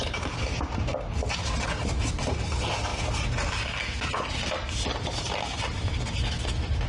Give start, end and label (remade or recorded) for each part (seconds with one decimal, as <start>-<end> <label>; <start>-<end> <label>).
0.0-6.9 recorded